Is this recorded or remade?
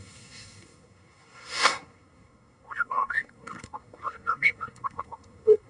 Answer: remade